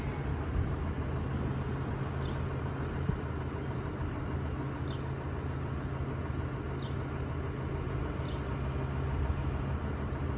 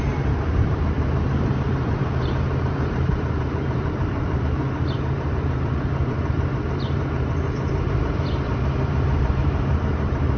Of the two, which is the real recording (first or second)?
first